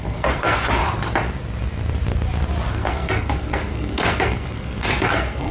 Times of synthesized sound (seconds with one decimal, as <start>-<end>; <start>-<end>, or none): 0.0-0.8; 2.7-5.5